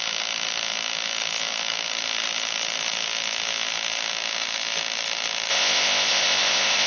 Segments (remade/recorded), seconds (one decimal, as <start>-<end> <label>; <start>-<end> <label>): 0.0-5.5 recorded; 5.5-6.9 remade